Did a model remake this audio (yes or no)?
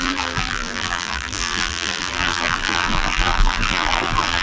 yes